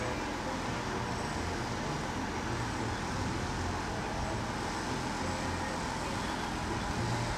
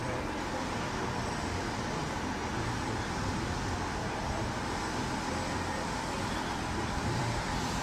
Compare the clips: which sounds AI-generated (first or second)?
second